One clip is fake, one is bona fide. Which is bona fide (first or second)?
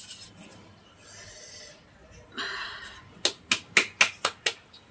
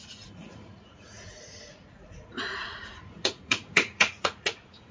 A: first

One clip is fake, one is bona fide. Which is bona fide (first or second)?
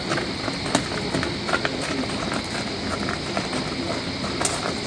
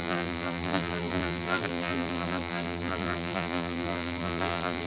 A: first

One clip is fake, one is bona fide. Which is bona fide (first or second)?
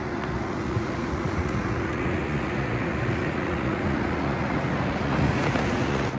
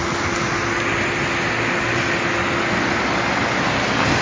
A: second